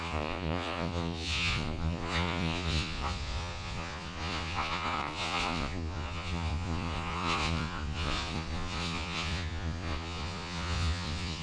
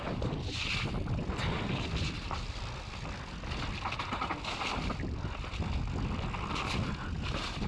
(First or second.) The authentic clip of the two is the second